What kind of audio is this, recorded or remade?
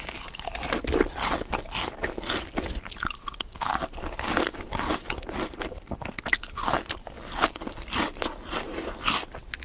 recorded